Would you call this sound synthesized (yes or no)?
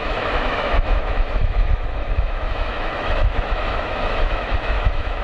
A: yes